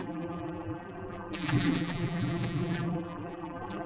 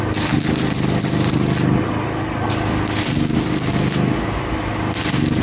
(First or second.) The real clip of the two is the second